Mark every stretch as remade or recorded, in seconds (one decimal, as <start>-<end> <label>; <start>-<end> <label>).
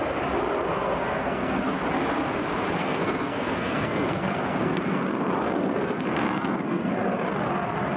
0.0-0.7 recorded; 0.7-1.7 remade; 1.7-2.8 recorded; 2.8-5.0 remade; 5.0-5.4 recorded; 5.4-6.9 remade; 6.9-8.0 recorded